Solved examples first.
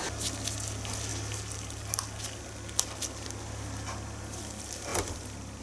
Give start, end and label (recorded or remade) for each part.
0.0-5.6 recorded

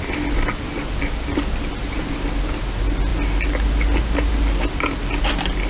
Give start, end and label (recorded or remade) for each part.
0.0-5.7 recorded